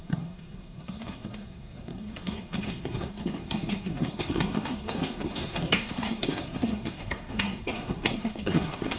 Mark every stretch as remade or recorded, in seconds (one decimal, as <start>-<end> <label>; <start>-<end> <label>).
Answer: 0.0-9.0 remade